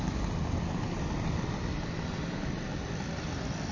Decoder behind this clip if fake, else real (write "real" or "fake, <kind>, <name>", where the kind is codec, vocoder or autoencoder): real